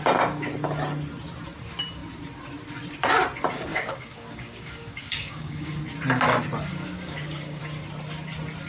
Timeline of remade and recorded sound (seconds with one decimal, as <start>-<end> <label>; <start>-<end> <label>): 0.0-3.7 recorded; 3.7-5.8 remade; 5.8-6.7 recorded; 6.7-7.6 remade; 7.6-8.7 recorded